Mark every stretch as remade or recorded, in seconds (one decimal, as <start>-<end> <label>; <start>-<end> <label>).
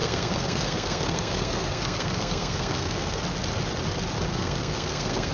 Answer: 0.0-3.2 remade; 3.2-4.3 recorded; 4.3-5.3 remade